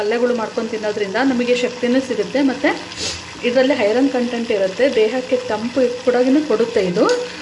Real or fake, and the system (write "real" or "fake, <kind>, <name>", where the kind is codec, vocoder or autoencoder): real